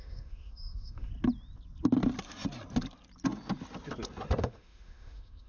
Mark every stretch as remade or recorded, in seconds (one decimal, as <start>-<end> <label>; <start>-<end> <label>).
0.0-1.1 remade; 1.1-4.4 recorded; 4.4-5.5 remade